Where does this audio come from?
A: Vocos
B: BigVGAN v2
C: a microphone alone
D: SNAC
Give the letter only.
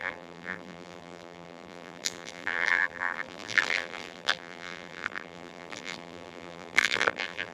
B